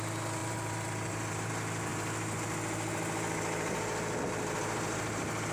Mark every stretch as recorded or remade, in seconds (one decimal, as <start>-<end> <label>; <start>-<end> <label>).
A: 0.0-0.4 recorded; 0.4-1.5 remade; 1.5-5.5 recorded